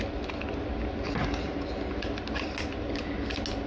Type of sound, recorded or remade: recorded